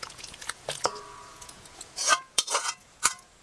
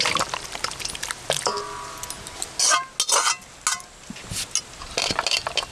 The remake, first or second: first